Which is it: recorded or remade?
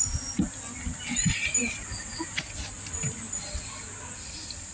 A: recorded